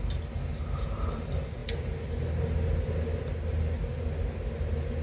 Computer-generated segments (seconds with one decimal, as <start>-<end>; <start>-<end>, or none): none